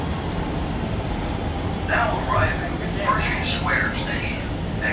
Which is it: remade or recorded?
recorded